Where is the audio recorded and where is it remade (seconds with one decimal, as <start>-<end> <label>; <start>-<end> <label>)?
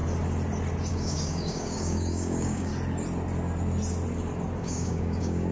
0.0-0.9 recorded; 0.9-2.7 remade; 2.7-4.6 recorded; 4.6-5.5 remade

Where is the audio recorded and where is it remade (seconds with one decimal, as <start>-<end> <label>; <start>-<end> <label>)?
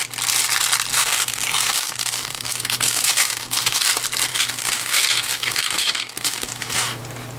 0.0-0.9 recorded; 0.9-3.9 remade; 3.9-4.3 recorded; 4.3-7.0 remade; 7.0-7.4 recorded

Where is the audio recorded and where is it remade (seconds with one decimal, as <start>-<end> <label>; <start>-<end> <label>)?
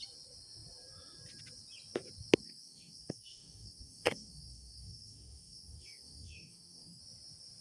0.0-2.4 recorded; 2.4-7.0 remade; 7.0-7.6 recorded